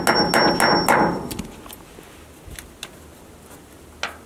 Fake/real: real